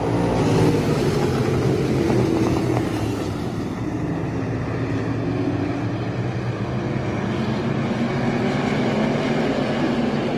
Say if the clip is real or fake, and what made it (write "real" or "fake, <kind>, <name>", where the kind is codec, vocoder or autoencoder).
real